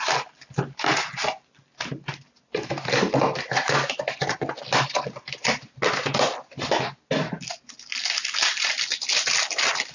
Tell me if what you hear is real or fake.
real